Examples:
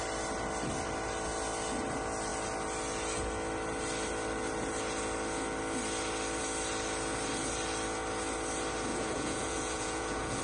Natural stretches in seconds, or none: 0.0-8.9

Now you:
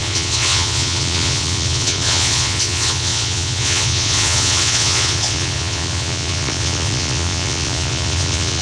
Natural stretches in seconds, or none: none

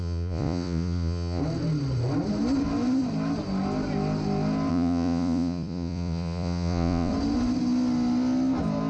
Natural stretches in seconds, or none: 1.4-4.7; 7.1-8.9